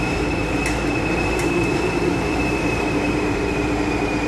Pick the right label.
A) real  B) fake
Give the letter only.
B